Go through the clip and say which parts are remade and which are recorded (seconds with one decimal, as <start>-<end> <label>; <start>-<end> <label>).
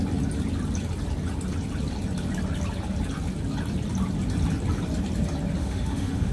0.0-5.6 recorded; 5.6-6.3 remade